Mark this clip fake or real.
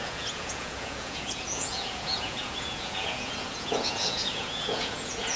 fake